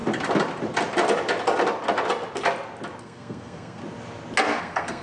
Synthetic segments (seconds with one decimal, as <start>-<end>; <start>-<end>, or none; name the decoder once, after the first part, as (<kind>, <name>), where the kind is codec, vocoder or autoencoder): 3.0-3.8 (codec, SNAC); 4.6-5.0